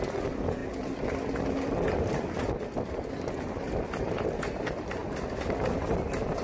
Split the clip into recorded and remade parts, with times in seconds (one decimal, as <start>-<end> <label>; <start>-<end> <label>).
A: 0.0-6.4 recorded

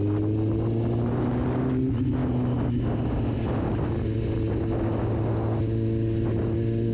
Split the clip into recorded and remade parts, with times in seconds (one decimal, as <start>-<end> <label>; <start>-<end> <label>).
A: 0.0-6.9 recorded

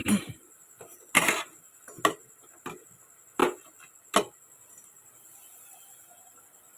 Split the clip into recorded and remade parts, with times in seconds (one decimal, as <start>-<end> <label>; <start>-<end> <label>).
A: 0.0-6.8 recorded

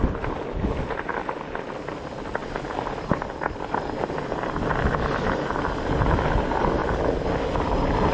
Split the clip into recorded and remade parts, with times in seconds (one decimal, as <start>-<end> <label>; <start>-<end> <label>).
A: 0.0-2.4 recorded; 2.4-3.6 remade; 3.6-6.8 recorded; 6.8-7.3 remade; 7.3-8.1 recorded

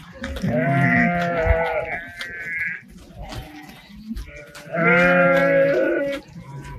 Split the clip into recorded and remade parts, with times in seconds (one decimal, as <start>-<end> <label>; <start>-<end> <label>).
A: 0.0-6.8 recorded

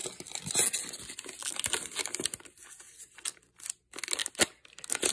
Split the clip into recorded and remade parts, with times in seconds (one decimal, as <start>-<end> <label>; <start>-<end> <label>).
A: 0.0-5.1 recorded

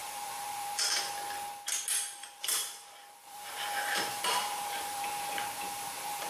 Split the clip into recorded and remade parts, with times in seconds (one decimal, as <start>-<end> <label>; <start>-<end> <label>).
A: 0.0-1.1 remade; 1.1-2.2 recorded; 2.2-6.3 remade